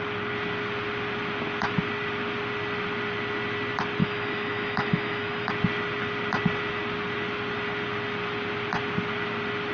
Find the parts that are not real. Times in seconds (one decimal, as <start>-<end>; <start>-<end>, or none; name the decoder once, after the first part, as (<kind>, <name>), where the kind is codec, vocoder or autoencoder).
4.0-5.5 (autoencoder, DAC-VAE)